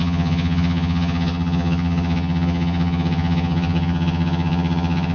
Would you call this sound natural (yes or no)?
no